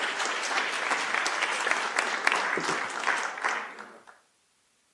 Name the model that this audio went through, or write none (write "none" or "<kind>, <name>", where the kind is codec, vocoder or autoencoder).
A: none